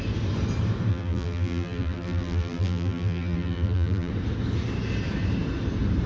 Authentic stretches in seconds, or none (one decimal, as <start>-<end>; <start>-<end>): 0.0-0.9; 4.1-6.1

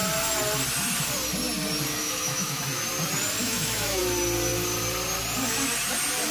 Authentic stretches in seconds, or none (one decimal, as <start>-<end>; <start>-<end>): 0.0-2.0; 2.6-3.4; 4.0-6.3

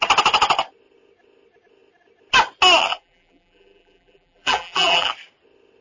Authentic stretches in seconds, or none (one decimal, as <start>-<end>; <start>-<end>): 0.0-2.9; 5.1-5.8